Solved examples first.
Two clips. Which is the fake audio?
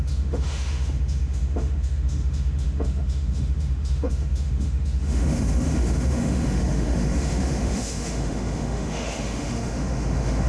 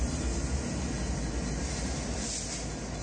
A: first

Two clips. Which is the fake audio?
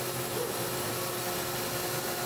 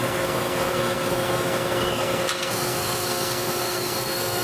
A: second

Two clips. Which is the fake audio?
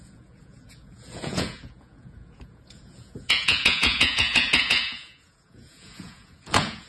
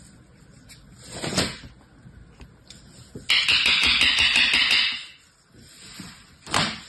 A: first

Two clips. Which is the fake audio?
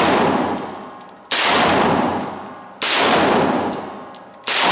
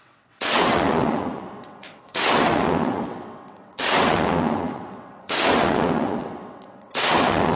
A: second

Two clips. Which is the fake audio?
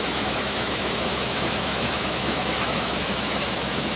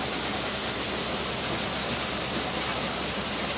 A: first